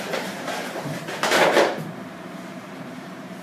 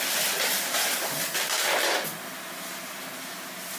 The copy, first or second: first